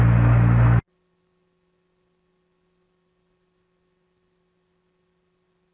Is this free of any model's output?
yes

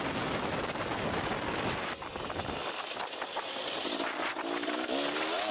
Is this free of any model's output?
yes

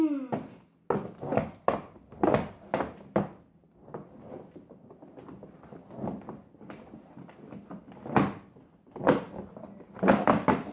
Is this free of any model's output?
yes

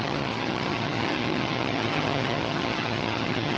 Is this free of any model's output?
no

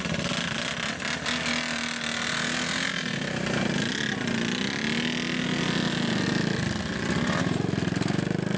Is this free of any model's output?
yes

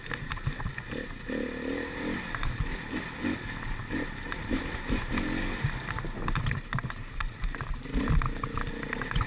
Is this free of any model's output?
yes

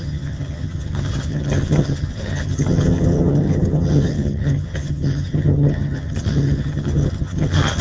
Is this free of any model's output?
no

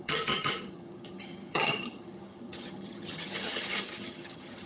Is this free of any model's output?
no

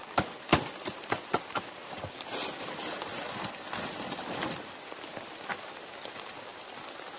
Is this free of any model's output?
yes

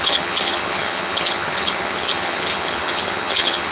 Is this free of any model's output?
no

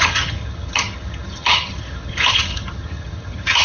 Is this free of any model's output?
no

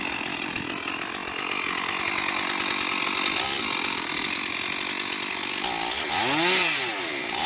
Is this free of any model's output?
yes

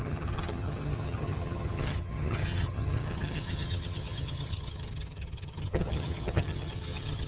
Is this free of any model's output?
no